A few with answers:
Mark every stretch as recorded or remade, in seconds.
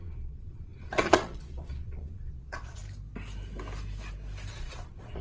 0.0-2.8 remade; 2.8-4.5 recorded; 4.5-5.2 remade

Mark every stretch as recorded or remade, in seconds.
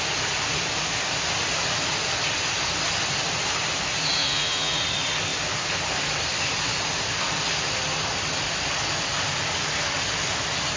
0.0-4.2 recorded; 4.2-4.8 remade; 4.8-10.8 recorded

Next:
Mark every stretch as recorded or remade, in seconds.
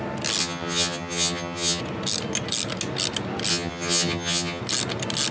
0.0-0.4 recorded; 0.4-1.8 remade; 1.8-3.5 recorded; 3.5-4.6 remade; 4.6-5.3 recorded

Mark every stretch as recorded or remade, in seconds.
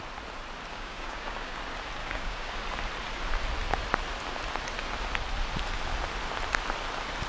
0.0-0.7 recorded; 0.7-1.6 remade; 1.6-2.0 recorded; 2.0-2.6 remade; 2.6-7.3 recorded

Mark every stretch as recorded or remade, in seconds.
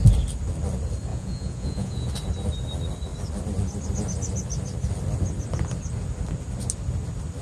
0.0-1.1 recorded; 1.1-2.1 remade; 2.1-7.4 recorded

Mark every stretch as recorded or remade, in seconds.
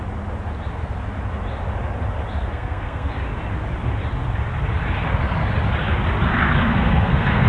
0.0-2.4 recorded; 2.4-3.1 remade; 3.1-6.6 recorded; 6.6-7.5 remade